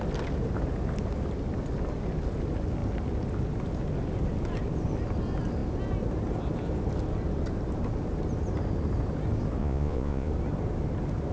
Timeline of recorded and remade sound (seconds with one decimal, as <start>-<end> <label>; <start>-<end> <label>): 0.0-9.6 recorded; 9.6-10.3 remade; 10.3-11.3 recorded